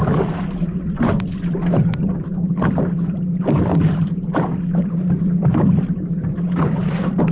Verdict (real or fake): fake